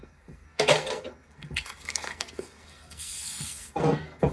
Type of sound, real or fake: fake